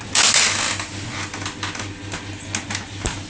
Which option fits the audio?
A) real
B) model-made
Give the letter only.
A